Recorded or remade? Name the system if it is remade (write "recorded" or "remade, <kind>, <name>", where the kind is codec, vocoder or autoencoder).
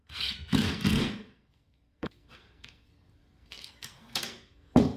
remade, codec, SNAC